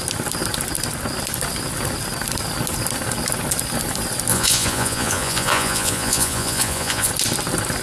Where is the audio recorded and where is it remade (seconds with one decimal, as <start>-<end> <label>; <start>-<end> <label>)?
0.0-4.3 recorded; 4.3-7.1 remade; 7.1-7.8 recorded